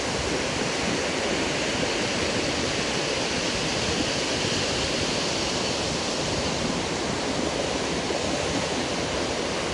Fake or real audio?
real